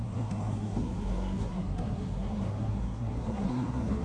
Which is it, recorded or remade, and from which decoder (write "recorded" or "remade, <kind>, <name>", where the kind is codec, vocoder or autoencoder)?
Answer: remade, codec, SNAC